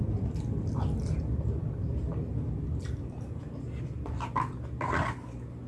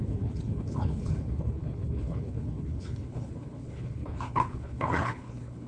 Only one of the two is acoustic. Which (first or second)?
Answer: first